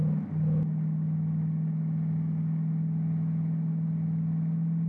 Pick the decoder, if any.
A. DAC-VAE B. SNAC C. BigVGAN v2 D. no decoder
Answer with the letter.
D